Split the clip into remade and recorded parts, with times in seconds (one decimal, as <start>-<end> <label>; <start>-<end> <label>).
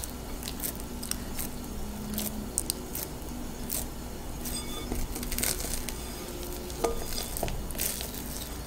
0.0-8.7 recorded